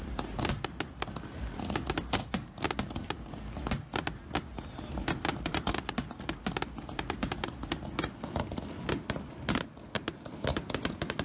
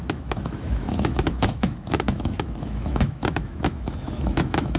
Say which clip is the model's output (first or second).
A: second